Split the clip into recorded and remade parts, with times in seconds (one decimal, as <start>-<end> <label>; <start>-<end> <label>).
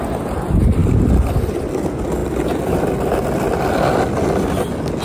0.0-5.0 recorded